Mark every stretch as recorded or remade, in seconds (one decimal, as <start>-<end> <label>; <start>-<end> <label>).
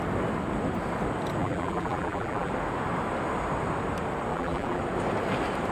0.0-1.4 recorded; 1.4-2.5 remade; 2.5-4.3 recorded; 4.3-4.8 remade; 4.8-5.7 recorded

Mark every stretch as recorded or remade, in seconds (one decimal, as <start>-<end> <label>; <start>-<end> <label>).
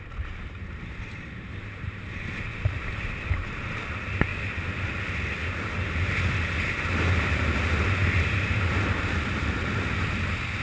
0.0-4.3 remade; 4.3-6.7 recorded; 6.7-10.6 remade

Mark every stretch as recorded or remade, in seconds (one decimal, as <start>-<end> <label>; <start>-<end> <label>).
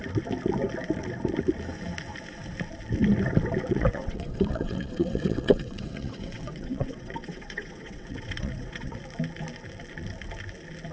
0.0-3.7 recorded; 3.7-9.0 remade; 9.0-10.9 recorded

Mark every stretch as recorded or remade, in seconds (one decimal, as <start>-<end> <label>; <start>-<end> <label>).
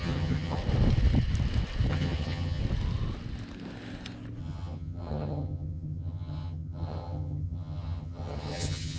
0.0-0.6 remade; 0.6-1.9 recorded; 1.9-2.6 remade; 2.6-4.4 recorded; 4.4-9.0 remade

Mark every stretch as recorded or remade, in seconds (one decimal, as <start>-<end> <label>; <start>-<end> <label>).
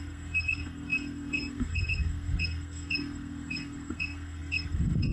0.0-5.1 remade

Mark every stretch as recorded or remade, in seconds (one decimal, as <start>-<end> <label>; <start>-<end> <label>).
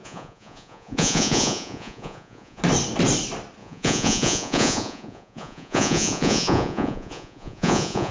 0.0-2.6 remade; 2.6-3.6 recorded; 3.6-8.1 remade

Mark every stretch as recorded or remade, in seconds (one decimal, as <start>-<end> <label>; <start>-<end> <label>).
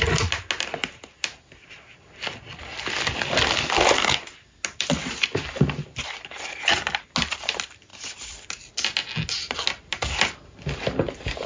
0.0-11.5 recorded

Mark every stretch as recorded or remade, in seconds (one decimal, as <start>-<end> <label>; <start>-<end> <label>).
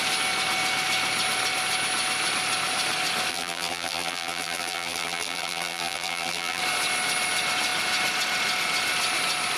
0.0-3.3 recorded; 3.3-6.6 remade; 6.6-9.6 recorded